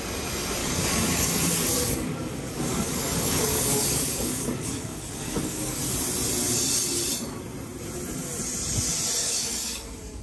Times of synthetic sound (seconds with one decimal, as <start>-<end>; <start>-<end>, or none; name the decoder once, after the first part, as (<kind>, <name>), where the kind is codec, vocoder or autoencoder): 0.6-5.8 (codec, DAC); 9.2-10.2